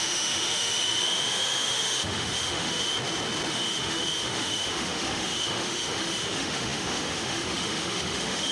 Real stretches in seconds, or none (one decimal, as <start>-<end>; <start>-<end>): 2.9-3.5